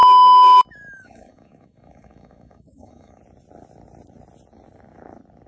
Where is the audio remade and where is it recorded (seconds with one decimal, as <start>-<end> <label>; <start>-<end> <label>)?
0.0-3.2 remade; 3.2-5.5 recorded